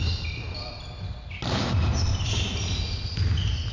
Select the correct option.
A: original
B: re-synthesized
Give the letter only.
A